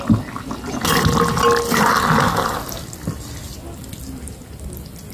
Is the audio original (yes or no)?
yes